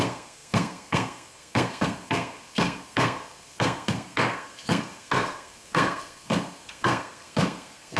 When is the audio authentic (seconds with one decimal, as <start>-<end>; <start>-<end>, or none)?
none